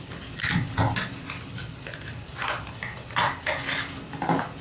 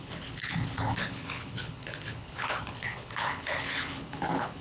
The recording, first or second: first